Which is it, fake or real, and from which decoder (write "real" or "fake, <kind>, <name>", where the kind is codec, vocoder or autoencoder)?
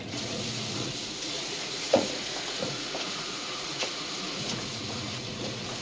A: fake, vocoder, Vocos